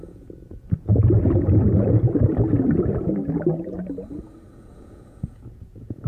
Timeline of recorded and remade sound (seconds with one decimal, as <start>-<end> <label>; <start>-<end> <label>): 0.0-0.9 remade; 0.9-4.6 recorded; 4.6-6.1 remade